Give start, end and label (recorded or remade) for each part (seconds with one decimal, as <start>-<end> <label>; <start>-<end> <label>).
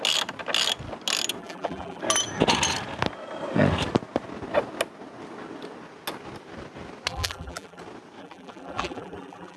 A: 0.0-1.4 recorded; 1.4-2.0 remade; 2.0-7.1 recorded; 7.1-7.8 remade; 7.8-8.2 recorded; 8.2-9.6 remade